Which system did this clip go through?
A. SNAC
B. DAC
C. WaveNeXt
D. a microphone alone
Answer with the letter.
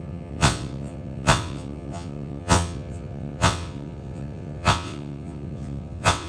C